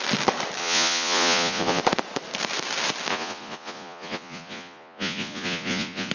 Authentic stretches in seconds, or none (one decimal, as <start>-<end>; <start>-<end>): 0.0-0.6; 1.8-3.1